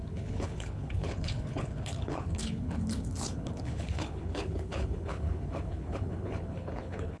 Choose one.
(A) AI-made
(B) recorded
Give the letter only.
A